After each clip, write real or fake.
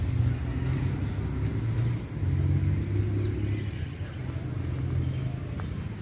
real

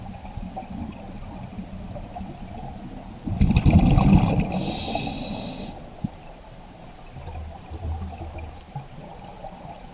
real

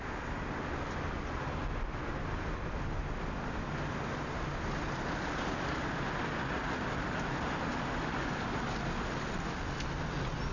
real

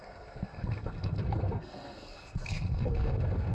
fake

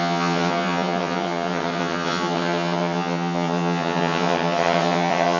fake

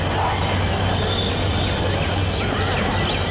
real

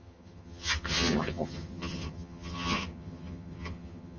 fake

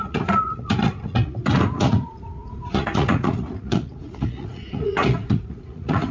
fake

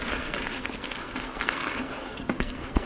fake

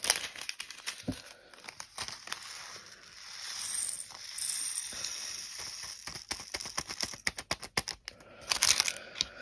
real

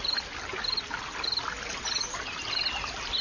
real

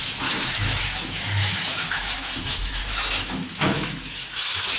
fake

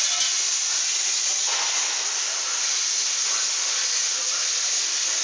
real